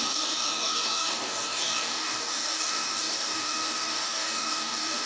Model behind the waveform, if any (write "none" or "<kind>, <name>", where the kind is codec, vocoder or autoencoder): codec, DAC